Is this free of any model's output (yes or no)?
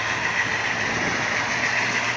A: yes